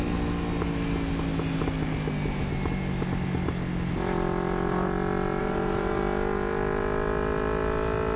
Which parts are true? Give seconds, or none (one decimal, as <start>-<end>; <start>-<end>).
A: 0.0-5.4; 6.0-8.2